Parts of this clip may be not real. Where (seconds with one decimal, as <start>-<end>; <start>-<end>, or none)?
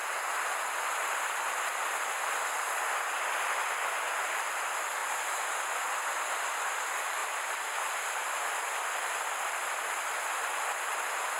5.0-5.6; 7.2-7.8